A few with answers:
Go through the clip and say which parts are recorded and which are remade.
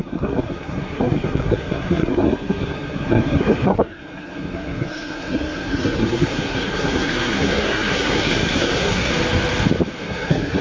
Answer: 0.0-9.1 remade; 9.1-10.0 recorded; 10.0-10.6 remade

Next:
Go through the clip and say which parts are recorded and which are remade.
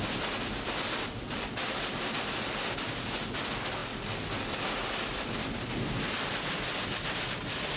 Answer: 0.0-7.8 recorded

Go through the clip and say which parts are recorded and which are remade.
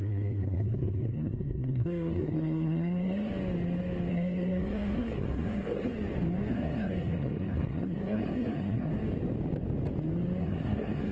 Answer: 0.0-3.3 remade; 3.3-4.1 recorded; 4.1-5.9 remade; 5.9-6.5 recorded; 6.5-8.9 remade; 8.9-10.4 recorded; 10.4-11.1 remade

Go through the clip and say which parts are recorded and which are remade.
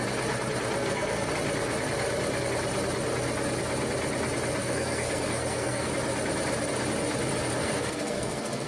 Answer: 0.0-0.8 recorded; 0.8-1.3 remade; 1.3-4.6 recorded; 4.6-5.9 remade; 5.9-7.6 recorded; 7.6-8.7 remade